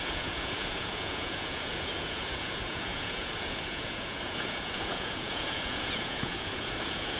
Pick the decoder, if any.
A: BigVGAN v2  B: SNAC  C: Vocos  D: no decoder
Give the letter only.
C